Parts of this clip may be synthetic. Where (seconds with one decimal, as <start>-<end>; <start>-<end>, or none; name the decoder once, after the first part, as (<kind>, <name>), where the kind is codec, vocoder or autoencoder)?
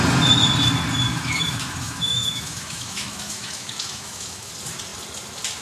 1.1-4.5 (autoencoder, DAC-VAE)